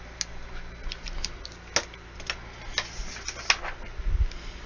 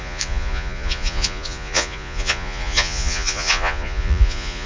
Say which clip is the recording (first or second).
first